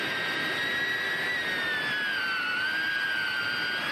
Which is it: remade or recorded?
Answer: recorded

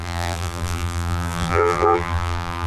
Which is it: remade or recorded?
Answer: remade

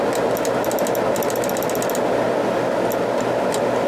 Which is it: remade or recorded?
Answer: recorded